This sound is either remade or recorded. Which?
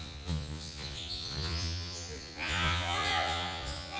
remade